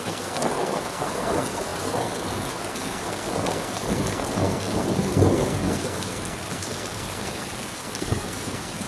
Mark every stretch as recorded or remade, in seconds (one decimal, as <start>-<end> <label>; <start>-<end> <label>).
0.0-8.9 remade